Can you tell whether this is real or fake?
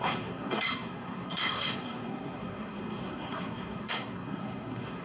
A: fake